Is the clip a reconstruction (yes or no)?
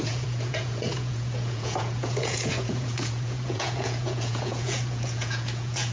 yes